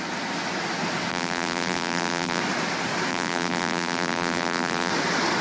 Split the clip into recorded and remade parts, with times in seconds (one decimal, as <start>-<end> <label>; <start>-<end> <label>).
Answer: 0.0-1.1 recorded; 1.1-2.4 remade; 2.4-3.1 recorded; 3.1-4.9 remade; 4.9-5.4 recorded